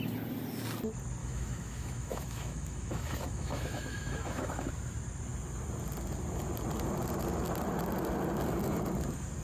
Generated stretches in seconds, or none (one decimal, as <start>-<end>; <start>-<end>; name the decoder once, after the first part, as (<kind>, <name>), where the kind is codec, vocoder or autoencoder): 1.2-4.7 (autoencoder, DAC-VAE)